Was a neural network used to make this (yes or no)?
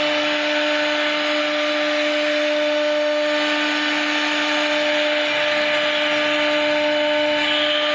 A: no